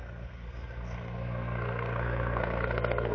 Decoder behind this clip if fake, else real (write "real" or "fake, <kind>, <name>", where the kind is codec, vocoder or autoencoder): fake, codec, SNAC